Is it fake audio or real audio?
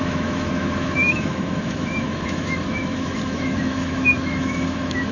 fake